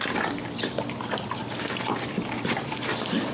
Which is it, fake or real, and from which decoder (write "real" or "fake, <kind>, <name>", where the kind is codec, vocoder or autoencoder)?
real